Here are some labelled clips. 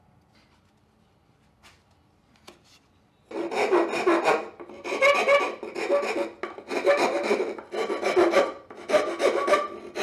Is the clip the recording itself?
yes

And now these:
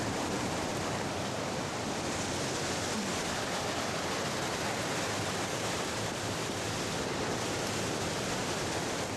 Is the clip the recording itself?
no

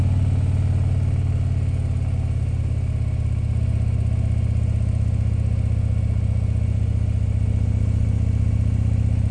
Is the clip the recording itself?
yes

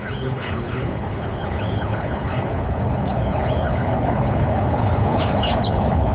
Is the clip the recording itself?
no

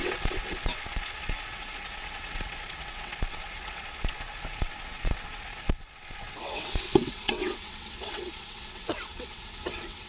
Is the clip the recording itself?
no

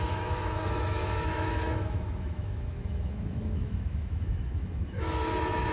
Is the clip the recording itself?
no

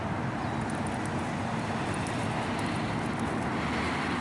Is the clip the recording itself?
yes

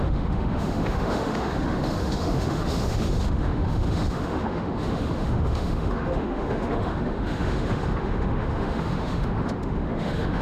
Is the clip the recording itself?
no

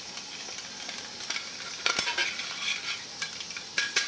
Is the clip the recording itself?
yes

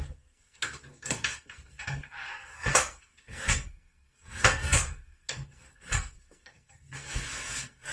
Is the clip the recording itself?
no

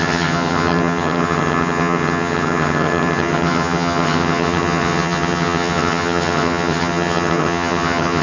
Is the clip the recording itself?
no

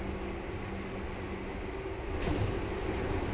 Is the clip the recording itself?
yes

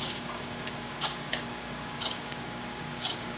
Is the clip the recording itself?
no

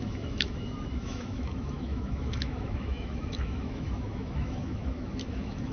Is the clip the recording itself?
no